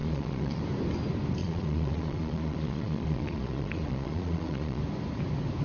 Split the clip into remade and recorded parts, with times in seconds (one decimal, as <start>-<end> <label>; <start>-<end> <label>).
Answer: 0.0-0.6 remade; 0.6-1.4 recorded; 1.4-4.8 remade; 4.8-5.6 recorded